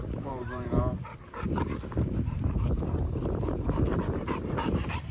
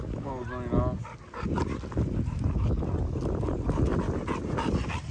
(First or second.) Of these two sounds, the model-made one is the first